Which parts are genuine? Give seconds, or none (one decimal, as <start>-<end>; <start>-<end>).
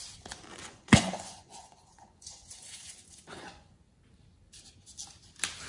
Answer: 0.0-0.5; 3.9-5.7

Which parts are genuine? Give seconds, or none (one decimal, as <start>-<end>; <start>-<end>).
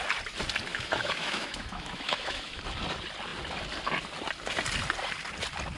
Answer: 0.0-0.7; 2.6-5.8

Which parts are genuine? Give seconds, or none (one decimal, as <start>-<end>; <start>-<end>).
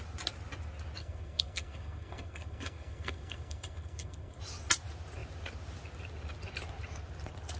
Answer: 0.0-1.0; 4.4-7.6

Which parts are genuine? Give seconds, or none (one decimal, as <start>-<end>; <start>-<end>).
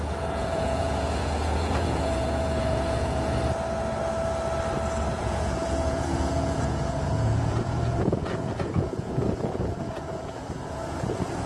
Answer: 3.4-5.1